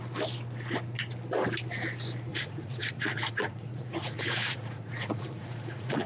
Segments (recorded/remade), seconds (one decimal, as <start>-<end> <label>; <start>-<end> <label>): 0.0-2.3 recorded; 2.3-6.1 remade